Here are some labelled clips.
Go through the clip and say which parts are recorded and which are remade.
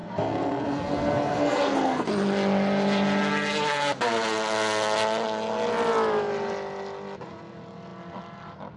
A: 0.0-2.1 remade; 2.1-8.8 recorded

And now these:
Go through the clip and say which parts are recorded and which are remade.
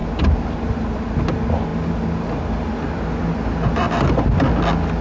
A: 0.0-1.2 remade; 1.2-5.0 recorded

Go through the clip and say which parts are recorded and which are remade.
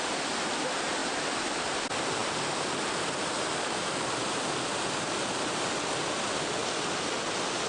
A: 0.0-7.7 recorded